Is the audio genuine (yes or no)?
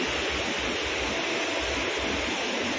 yes